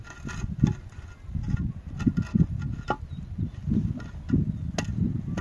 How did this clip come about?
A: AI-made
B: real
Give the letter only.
B